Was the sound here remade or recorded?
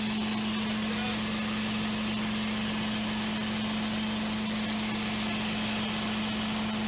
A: recorded